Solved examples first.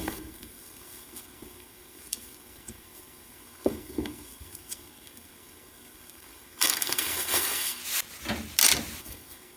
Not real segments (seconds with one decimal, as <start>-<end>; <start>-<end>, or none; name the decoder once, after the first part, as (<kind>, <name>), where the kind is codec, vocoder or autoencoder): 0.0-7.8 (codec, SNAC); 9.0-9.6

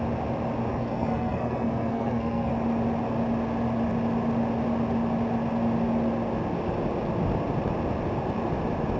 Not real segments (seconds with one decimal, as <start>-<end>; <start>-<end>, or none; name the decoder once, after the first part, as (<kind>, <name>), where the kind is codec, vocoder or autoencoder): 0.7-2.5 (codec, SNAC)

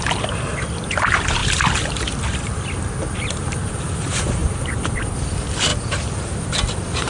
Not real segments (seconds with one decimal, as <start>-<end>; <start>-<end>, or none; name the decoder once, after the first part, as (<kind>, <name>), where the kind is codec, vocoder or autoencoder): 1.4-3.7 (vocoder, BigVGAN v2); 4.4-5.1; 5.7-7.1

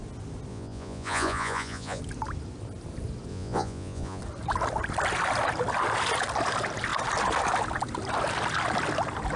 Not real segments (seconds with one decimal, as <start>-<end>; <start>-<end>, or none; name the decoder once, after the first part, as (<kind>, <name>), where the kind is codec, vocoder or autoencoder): 0.5-2.0 (vocoder, Vocos); 3.3-4.2

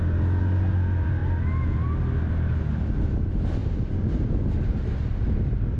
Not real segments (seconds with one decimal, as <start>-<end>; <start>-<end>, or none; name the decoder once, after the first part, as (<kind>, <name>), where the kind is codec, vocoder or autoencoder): none

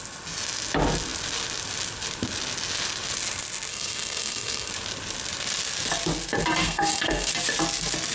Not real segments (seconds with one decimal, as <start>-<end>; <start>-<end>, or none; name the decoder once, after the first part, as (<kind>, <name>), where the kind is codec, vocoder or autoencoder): 3.7-4.7 (codec, SNAC); 6.6-7.3